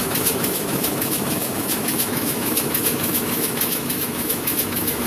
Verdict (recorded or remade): remade